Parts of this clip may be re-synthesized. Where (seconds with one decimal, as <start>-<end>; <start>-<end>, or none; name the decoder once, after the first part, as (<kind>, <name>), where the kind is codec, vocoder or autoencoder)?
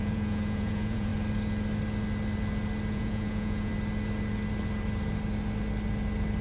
0.0-1.1 (vocoder, Vocos); 2.9-3.7